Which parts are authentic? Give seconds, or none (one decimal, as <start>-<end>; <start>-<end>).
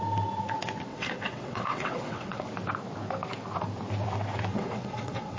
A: 0.0-0.9; 2.5-4.5